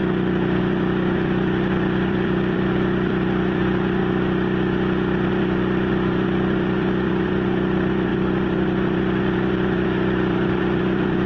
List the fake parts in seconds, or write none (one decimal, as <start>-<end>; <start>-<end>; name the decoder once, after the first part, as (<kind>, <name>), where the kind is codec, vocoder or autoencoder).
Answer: 0.6-4.0 (vocoder, BigVGAN v2); 5.4-11.3